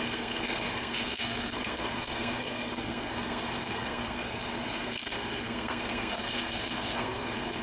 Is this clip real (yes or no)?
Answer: no